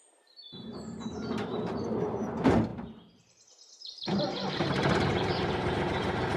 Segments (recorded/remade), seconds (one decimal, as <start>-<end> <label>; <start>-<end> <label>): 0.0-6.4 remade